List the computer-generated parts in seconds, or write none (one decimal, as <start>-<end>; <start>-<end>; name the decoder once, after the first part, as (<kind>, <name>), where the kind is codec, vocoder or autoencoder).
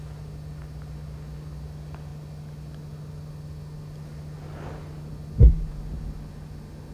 none